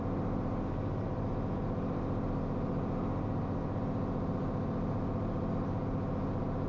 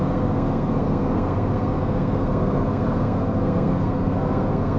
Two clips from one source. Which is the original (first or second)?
first